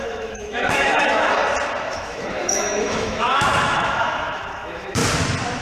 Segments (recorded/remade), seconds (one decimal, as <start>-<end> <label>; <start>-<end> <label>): 0.0-1.4 remade; 1.4-1.9 recorded; 1.9-5.0 remade; 5.0-5.6 recorded